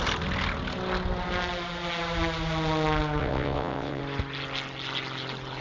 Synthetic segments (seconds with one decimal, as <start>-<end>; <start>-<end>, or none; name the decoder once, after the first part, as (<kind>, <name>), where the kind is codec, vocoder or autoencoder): 3.2-4.0 (vocoder, WaveNeXt)